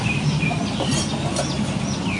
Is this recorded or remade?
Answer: recorded